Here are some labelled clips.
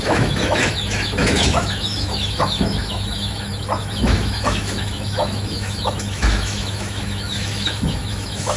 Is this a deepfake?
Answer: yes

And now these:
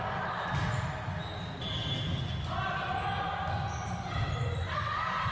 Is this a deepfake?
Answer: no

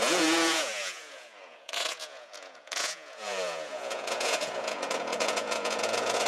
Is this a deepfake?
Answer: yes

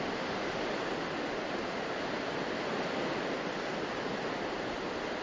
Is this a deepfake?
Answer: no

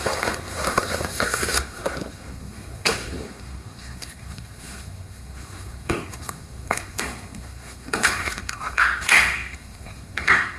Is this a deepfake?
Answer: yes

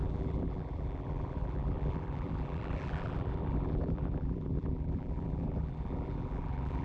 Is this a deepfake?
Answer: yes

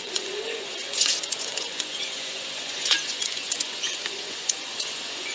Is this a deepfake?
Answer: yes